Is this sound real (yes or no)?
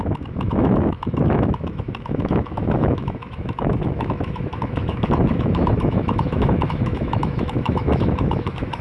no